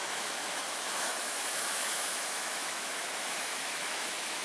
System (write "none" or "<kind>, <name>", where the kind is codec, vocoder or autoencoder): autoencoder, DAC-VAE